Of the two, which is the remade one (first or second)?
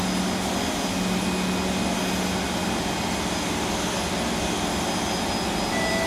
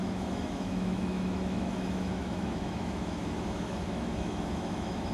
second